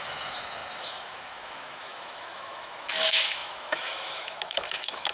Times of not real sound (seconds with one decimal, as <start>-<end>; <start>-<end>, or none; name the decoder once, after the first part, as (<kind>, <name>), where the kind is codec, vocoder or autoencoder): 0.0-5.1 (autoencoder, DAC-VAE)